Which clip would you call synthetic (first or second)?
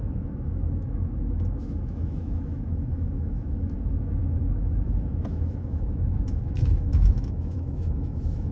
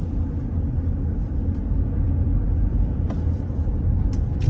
first